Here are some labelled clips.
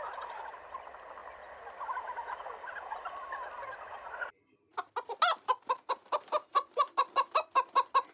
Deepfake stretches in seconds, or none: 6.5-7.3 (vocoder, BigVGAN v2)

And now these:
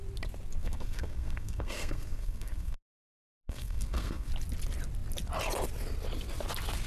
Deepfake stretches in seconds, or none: 0.6-4.3 (codec, SNAC)

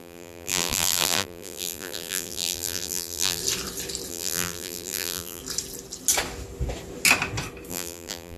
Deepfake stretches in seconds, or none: 0.0-3.4 (vocoder, BigVGAN v2); 4.1-5.4; 7.7-8.4

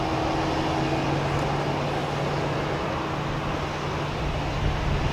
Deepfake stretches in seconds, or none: none

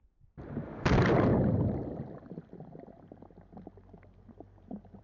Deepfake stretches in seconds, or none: 0.0-1.3 (vocoder, BigVGAN v2); 4.3-5.0

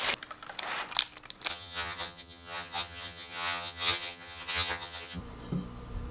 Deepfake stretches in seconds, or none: 1.5-5.2 (vocoder, HiFi-GAN)

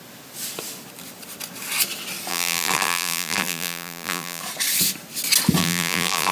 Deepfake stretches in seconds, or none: 2.3-4.4 (vocoder, BigVGAN v2); 5.6-6.3